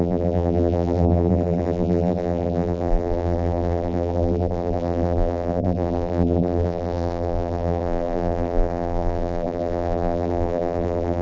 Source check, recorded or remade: remade